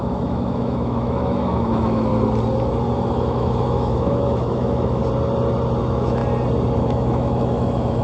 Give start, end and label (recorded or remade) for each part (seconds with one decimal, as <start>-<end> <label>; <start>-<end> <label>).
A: 0.0-2.1 remade; 2.1-3.1 recorded; 3.1-5.0 remade; 5.0-5.8 recorded; 5.8-6.2 remade; 6.2-6.8 recorded; 6.8-8.0 remade